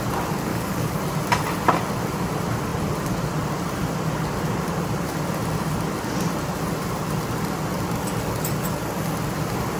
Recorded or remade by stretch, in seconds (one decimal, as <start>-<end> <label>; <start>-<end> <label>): 0.0-0.5 recorded; 0.5-1.0 remade; 1.0-9.8 recorded